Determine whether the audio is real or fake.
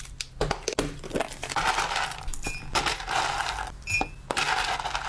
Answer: real